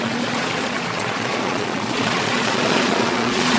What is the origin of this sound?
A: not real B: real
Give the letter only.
A